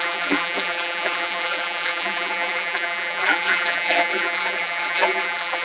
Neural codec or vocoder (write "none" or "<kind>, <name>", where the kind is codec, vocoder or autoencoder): vocoder, BigVGAN v2